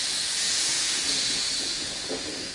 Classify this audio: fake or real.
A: fake